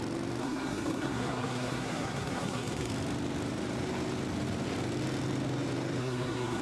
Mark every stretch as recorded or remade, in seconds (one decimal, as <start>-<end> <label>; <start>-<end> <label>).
0.0-0.4 recorded; 0.4-2.9 remade; 2.9-6.0 recorded; 6.0-6.6 remade

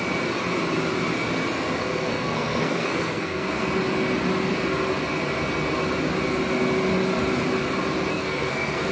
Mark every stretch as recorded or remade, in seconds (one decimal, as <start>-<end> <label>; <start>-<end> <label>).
0.0-1.8 recorded; 1.8-3.7 remade; 3.7-8.1 recorded; 8.1-8.9 remade

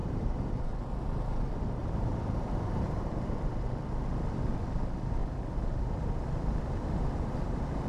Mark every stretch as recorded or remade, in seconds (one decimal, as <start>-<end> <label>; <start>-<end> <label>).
0.0-0.5 remade; 0.5-1.8 recorded; 1.8-3.1 remade; 3.1-5.2 recorded; 5.2-7.9 remade

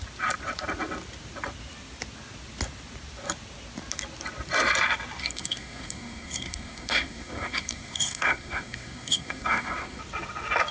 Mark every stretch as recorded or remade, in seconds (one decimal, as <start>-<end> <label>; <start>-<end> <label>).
0.0-5.2 recorded; 5.2-10.0 remade; 10.0-10.7 recorded

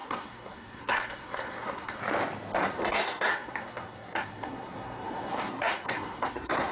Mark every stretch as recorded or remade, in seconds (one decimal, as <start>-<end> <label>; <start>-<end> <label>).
0.0-2.0 remade; 2.0-2.6 recorded; 2.6-6.7 remade

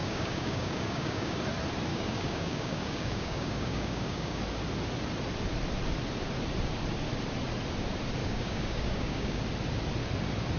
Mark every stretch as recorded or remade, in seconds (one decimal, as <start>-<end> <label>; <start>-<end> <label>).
0.0-1.4 remade; 1.4-1.9 recorded; 1.9-4.4 remade; 4.4-8.2 recorded; 8.2-9.4 remade; 9.4-10.6 recorded